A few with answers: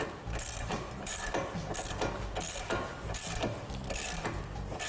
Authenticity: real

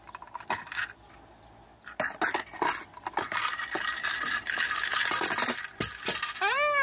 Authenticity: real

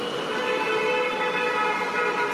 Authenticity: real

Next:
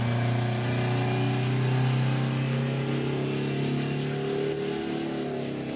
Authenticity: real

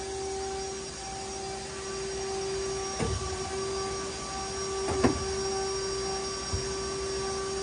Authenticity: real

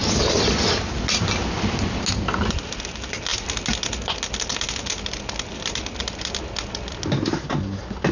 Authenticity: real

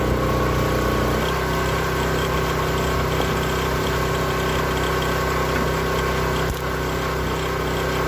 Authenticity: real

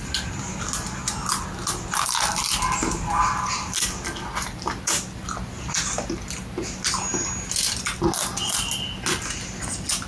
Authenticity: real